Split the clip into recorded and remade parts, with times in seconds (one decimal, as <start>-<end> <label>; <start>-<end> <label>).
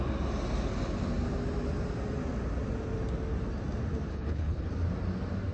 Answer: 0.0-4.1 recorded; 4.1-4.7 remade; 4.7-5.5 recorded